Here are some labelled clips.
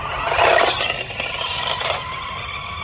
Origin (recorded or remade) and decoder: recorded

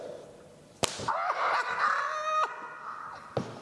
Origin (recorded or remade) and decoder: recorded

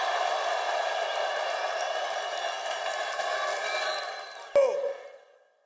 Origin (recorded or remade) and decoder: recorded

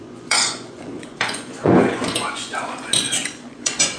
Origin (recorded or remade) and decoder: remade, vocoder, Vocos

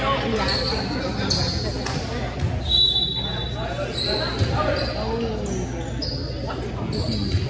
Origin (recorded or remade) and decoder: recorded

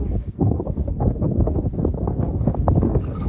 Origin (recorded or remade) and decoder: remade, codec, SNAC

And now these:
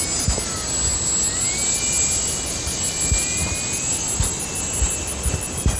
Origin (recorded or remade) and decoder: recorded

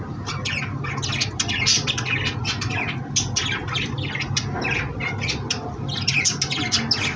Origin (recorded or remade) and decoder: recorded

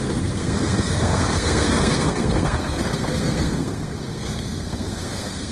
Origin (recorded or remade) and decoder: remade, codec, SNAC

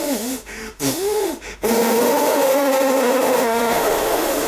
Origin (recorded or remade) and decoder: remade, autoencoder, DAC-VAE